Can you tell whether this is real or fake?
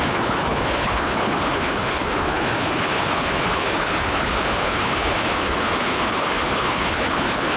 fake